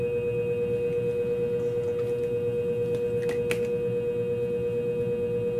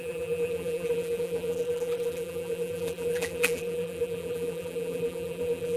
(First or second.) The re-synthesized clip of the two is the second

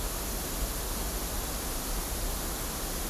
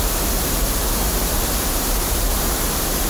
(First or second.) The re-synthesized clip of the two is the second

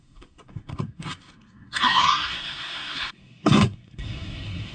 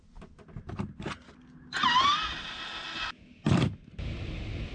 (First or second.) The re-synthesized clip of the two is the first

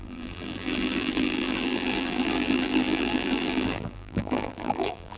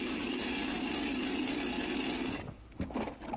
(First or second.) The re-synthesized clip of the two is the first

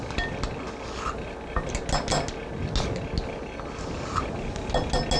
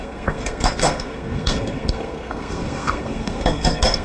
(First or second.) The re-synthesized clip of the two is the second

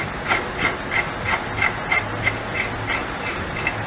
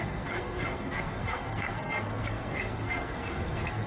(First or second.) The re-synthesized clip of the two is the second